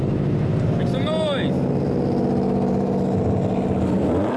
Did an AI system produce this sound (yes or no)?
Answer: no